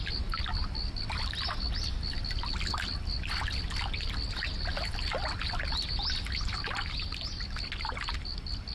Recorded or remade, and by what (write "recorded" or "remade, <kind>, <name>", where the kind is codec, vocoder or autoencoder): recorded